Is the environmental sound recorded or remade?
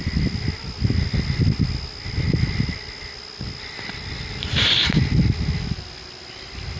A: recorded